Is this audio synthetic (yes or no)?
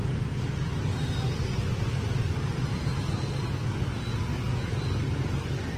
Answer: no